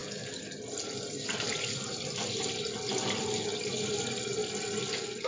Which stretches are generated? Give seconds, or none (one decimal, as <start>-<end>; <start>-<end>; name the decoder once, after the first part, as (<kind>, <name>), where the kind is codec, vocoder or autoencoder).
none

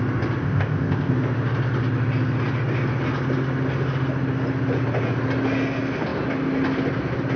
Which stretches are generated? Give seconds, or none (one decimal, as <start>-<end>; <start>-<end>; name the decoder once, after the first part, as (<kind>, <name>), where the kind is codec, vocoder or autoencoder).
0.4-1.1 (codec, ZipCodec)